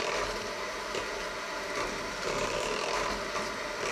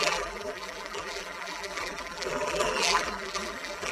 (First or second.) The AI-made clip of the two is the second